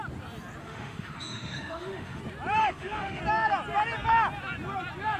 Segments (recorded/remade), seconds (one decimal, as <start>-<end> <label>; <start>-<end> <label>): 0.0-0.6 recorded; 0.6-2.2 remade; 2.2-2.6 recorded; 2.6-3.2 remade; 3.2-5.2 recorded